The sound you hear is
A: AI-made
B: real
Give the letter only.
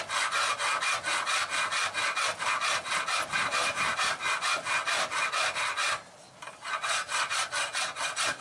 B